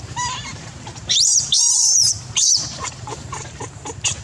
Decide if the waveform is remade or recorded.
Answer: remade